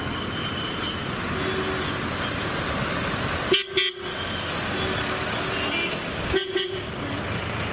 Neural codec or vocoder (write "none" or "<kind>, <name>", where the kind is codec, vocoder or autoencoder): none